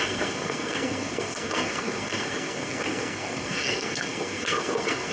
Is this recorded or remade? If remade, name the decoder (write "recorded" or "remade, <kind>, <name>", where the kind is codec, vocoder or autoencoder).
remade, codec, SNAC